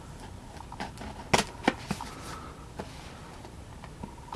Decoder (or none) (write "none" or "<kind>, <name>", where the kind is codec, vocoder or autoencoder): none